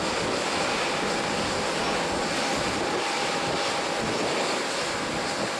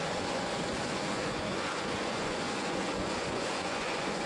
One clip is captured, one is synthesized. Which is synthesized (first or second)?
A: second